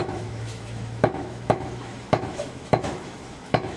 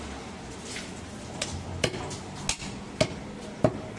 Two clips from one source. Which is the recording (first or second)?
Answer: second